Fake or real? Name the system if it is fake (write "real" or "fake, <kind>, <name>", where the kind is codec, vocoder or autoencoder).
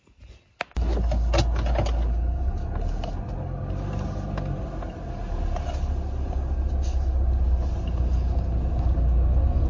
real